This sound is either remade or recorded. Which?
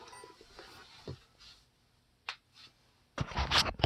recorded